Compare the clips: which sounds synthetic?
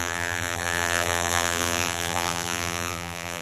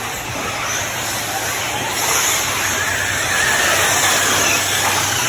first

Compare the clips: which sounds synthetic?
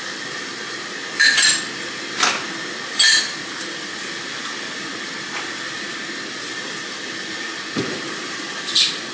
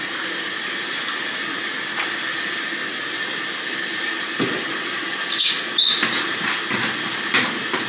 first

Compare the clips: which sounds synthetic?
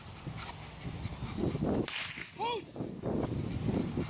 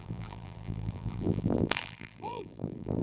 second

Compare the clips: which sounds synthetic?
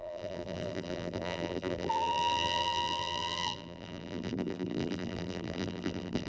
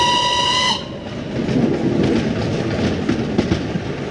first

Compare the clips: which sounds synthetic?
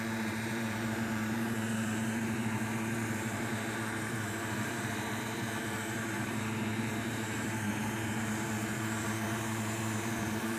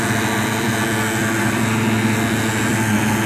first